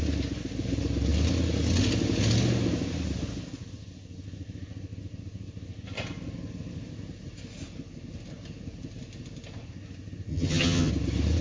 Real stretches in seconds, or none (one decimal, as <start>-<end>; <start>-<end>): 0.0-10.3; 10.9-11.4